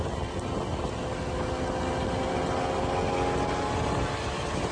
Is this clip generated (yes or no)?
no